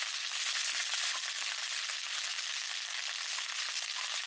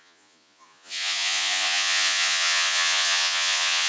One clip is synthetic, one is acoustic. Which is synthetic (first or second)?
second